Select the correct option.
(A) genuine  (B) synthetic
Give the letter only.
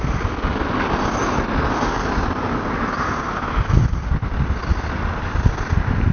A